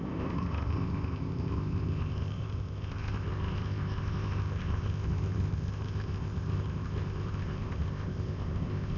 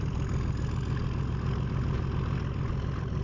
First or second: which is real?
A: second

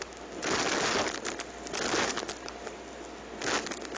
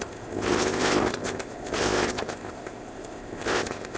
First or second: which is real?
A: first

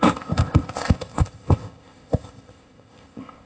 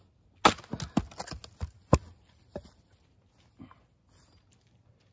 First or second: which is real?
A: second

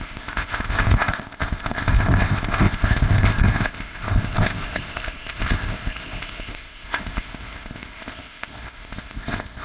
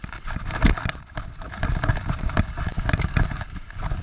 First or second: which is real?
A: second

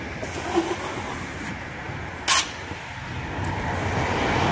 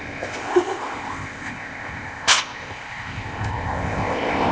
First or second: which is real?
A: first